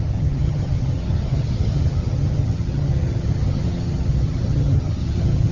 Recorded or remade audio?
remade